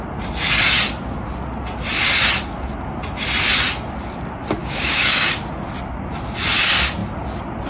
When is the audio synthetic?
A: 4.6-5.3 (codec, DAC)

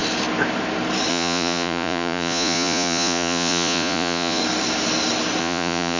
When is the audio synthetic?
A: 1.1-4.4 (vocoder, Vocos); 5.4-6.0

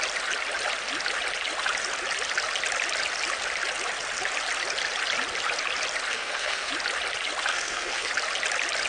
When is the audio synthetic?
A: 6.1-6.7 (codec, SNAC); 7.5-8.1